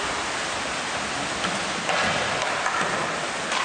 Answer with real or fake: real